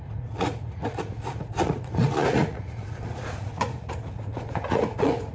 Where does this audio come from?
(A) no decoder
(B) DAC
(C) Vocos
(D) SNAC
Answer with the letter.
C